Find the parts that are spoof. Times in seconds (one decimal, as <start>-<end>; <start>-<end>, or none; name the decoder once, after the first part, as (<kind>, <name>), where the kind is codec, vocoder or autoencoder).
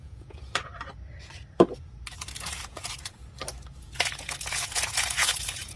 0.0-0.7 (vocoder, Vocos); 2.2-3.2; 3.8-5.8